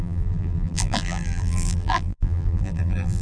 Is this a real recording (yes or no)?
no